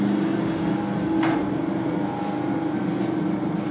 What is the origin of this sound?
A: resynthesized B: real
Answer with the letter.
B